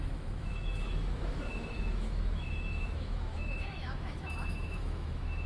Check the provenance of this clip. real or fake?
fake